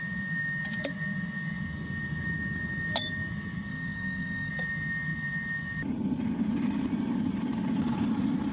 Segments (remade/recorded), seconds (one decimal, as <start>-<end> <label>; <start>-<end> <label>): 0.0-3.7 recorded; 3.7-4.5 remade; 4.5-8.5 recorded